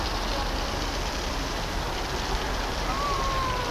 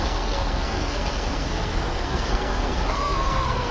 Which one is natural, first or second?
first